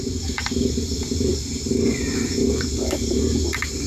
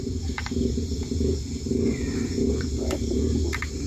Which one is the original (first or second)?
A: second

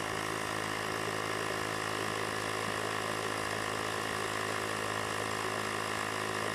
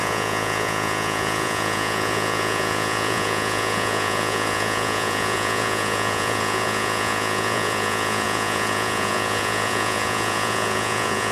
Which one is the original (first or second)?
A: first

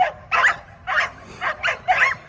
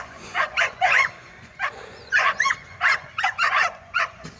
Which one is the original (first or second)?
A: first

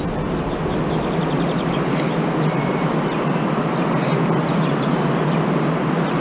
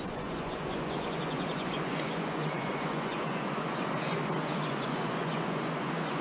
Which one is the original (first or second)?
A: first